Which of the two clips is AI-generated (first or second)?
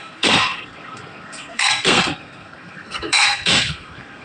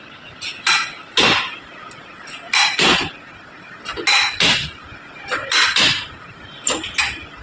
first